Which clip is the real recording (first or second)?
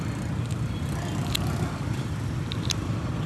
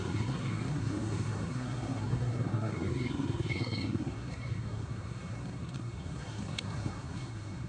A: first